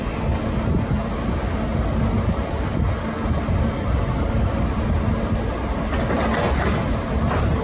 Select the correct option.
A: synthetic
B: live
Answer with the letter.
B